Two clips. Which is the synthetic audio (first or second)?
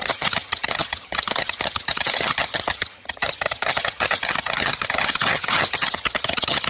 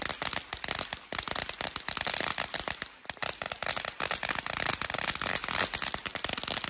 first